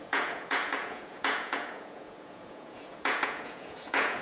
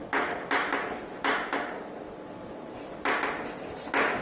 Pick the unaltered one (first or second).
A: second